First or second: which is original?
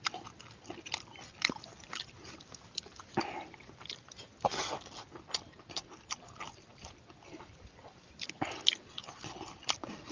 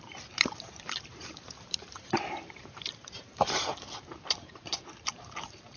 first